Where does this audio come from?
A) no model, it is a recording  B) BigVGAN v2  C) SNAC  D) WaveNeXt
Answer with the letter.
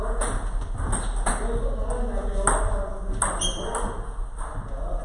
A